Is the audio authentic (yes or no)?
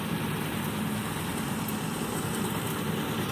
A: yes